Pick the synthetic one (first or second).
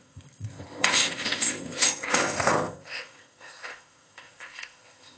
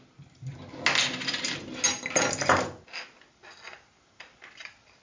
first